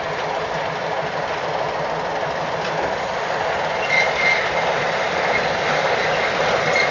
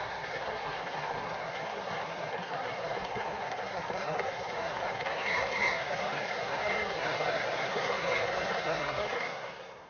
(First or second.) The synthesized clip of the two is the second